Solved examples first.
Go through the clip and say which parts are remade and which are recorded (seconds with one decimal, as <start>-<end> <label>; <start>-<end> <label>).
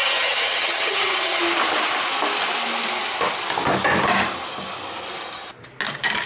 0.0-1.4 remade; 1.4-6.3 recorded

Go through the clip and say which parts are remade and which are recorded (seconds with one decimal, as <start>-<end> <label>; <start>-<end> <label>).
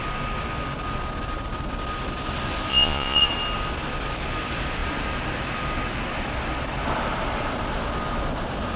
0.0-2.7 recorded; 2.7-3.3 remade; 3.3-8.8 recorded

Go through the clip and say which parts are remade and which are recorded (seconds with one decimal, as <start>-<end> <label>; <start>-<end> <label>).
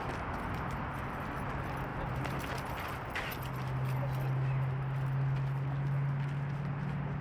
0.0-1.9 recorded; 1.9-2.5 remade; 2.5-7.2 recorded